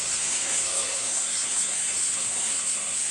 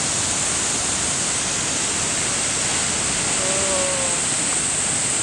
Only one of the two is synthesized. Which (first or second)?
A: first